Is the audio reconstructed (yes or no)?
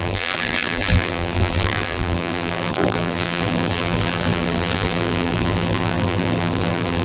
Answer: yes